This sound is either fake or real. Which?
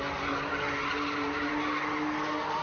real